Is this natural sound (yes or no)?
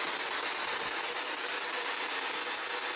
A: yes